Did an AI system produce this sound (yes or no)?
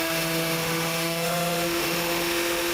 yes